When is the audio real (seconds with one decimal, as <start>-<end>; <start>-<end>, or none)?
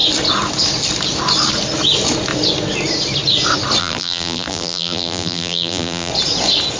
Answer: 0.0-3.8; 6.1-6.8